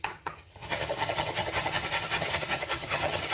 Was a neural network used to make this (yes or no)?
yes